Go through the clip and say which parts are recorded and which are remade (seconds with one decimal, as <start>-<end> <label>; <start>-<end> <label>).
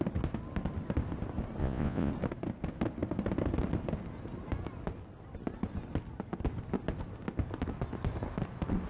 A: 0.0-1.6 recorded; 1.6-2.1 remade; 2.1-8.9 recorded